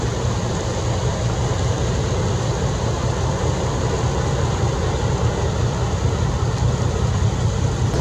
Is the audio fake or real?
real